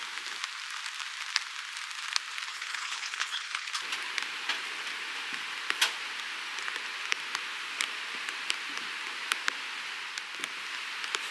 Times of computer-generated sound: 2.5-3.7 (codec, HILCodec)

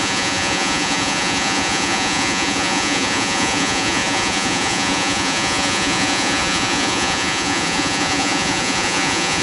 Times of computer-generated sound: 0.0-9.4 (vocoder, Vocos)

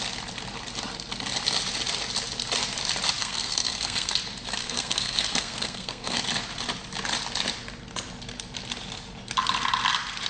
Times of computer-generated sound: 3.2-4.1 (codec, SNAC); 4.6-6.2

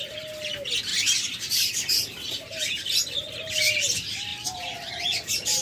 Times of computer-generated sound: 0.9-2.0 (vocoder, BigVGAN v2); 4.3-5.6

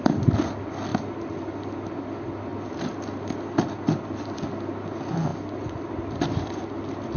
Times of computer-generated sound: none